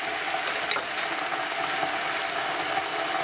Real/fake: real